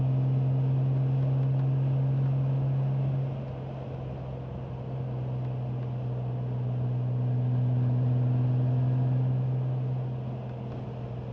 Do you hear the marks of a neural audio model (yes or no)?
no